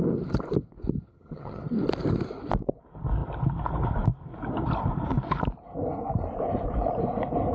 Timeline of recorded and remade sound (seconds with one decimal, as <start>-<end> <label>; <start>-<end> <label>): 0.0-1.1 recorded; 1.1-1.6 remade; 1.6-7.5 recorded